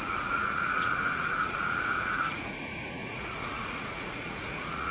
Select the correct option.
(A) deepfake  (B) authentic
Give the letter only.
A